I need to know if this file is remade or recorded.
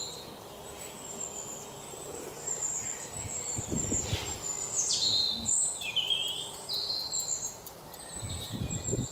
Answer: recorded